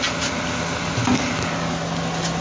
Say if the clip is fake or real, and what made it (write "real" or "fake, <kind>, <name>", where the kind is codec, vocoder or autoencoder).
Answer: real